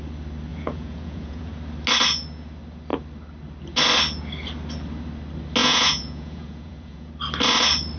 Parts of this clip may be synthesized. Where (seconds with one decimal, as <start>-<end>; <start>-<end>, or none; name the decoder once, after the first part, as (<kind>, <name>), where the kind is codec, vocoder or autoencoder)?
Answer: 0.5-1.5 (vocoder, Vocos); 5.6-7.1